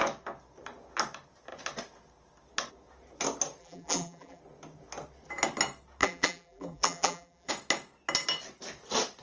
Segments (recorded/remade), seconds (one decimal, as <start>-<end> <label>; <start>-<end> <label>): 0.0-3.6 recorded; 3.6-4.4 remade; 4.4-6.0 recorded; 6.0-7.5 remade; 7.5-9.2 recorded